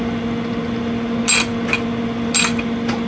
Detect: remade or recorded recorded